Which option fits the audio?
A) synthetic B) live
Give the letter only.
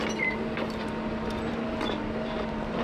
B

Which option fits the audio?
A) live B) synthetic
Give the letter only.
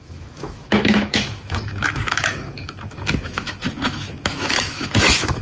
B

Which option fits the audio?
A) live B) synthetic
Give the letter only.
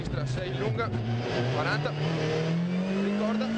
A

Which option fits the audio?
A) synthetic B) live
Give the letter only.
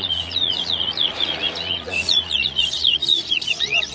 A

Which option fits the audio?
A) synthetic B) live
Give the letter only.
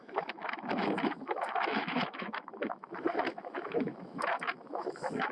A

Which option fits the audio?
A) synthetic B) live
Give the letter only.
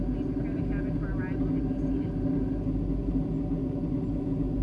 B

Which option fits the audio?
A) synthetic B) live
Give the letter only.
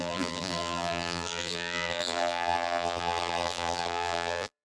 A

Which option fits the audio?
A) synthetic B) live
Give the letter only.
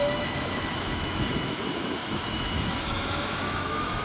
A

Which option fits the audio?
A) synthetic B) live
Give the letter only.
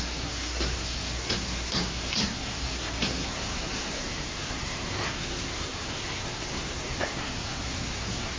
A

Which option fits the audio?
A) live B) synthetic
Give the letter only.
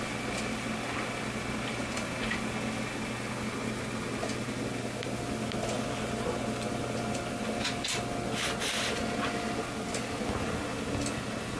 A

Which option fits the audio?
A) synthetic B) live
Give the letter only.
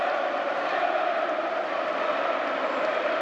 B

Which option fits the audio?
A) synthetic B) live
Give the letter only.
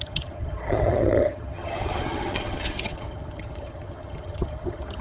A